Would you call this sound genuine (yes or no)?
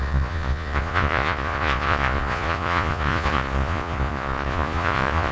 no